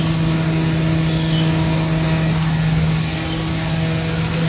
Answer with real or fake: real